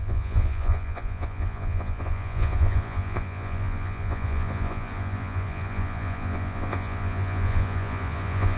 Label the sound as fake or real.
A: fake